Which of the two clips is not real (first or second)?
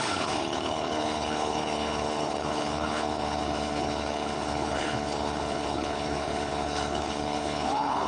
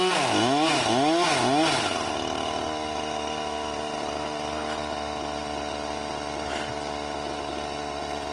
first